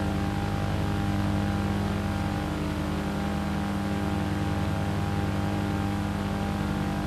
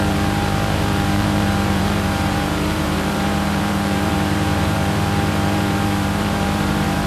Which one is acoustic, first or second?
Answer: first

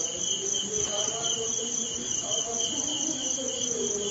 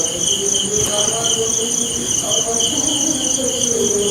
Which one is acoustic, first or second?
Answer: second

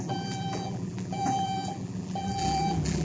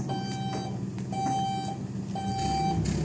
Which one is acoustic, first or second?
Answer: second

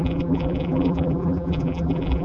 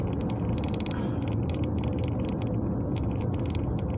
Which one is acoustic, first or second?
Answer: second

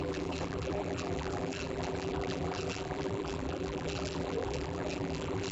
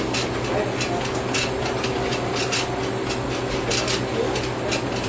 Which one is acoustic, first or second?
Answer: second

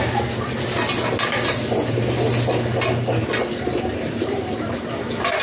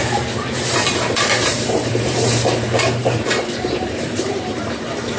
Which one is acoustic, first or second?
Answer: first